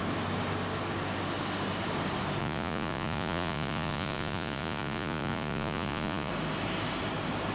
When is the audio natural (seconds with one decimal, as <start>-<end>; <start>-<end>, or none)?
0.0-2.4; 6.3-7.5